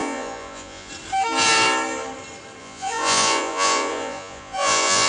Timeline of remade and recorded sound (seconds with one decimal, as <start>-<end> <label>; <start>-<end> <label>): 0.0-0.9 remade; 0.9-2.6 recorded; 2.6-5.1 remade